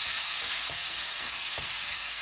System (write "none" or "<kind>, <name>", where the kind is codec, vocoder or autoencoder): codec, SNAC